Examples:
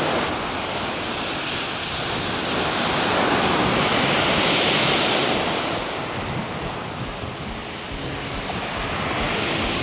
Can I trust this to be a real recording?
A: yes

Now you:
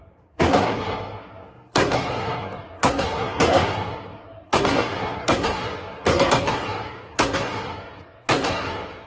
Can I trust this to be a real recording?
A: no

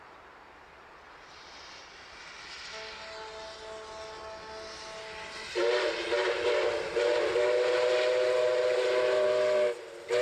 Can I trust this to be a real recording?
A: yes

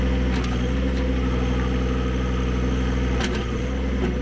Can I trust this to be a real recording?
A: yes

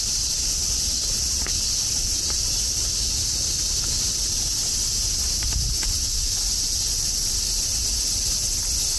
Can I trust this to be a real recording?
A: yes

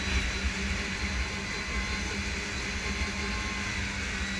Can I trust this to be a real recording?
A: yes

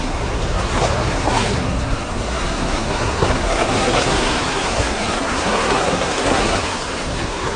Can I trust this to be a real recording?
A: no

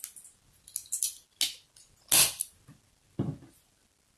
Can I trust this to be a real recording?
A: yes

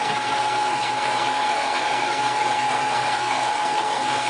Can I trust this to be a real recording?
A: no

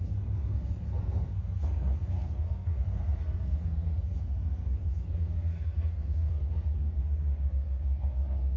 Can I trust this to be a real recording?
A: no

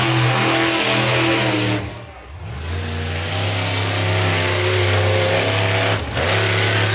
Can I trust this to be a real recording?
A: yes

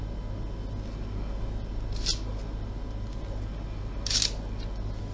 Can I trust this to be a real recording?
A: yes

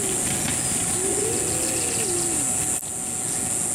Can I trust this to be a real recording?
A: yes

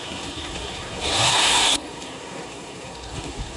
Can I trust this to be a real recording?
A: no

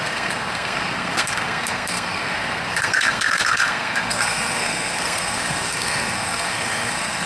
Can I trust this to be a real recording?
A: no